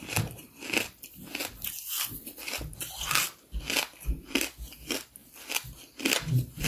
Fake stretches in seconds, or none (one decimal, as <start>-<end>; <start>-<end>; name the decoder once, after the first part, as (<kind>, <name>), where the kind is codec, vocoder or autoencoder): none